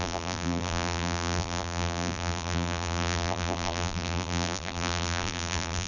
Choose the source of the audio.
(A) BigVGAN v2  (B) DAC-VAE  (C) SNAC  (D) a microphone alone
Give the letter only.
A